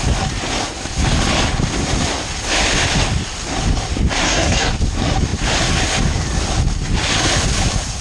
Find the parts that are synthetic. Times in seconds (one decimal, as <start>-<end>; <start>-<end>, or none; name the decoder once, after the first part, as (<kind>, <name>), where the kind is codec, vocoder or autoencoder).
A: 4.2-4.7 (codec, SNAC)